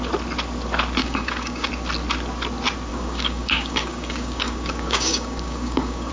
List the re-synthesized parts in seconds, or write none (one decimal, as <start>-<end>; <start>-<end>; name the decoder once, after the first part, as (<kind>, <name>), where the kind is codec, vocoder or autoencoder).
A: 1.0-1.7 (codec, DAC); 2.9-6.1